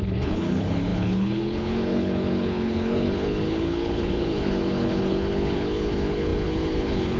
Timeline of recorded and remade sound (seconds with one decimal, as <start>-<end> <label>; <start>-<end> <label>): 0.0-7.2 remade